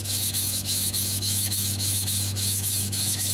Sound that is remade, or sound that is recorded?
remade